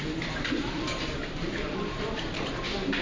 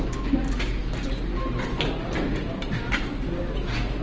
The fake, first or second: first